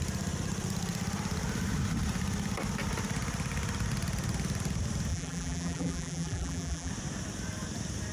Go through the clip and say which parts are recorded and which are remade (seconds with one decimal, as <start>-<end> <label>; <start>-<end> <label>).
0.0-5.1 recorded; 5.1-6.9 remade; 6.9-8.1 recorded